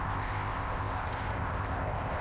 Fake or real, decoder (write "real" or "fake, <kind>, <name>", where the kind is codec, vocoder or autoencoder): fake, codec, ZipCodec